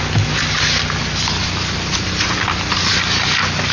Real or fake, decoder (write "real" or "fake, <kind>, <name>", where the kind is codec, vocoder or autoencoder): real